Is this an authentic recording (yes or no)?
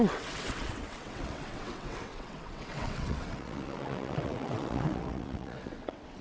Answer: no